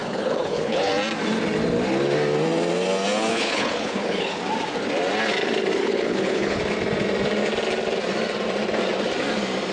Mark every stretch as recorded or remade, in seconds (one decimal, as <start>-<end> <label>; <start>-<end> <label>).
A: 0.0-0.9 remade; 0.9-3.3 recorded; 3.3-4.4 remade; 4.4-5.8 recorded; 5.8-6.6 remade; 6.6-9.7 recorded